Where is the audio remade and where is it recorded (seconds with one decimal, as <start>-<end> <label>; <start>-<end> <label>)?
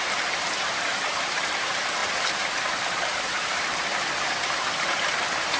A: 0.0-5.6 remade